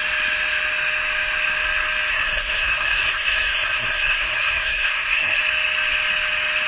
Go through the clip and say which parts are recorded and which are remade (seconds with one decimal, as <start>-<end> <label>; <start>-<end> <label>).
0.0-2.1 recorded; 2.1-5.4 remade; 5.4-6.7 recorded